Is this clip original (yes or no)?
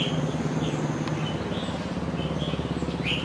yes